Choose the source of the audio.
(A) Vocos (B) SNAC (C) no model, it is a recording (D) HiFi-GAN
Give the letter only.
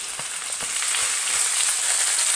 C